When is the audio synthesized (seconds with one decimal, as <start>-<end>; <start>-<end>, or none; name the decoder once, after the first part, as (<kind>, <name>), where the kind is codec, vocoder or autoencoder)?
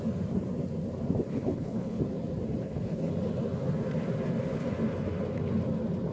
1.3-2.0 (codec, HILCodec); 2.6-3.1